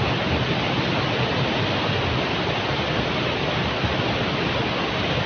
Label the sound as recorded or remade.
recorded